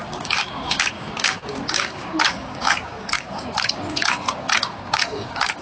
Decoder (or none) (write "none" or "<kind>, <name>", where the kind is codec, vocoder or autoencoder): codec, DAC